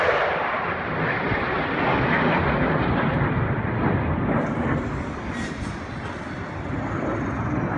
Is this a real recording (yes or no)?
yes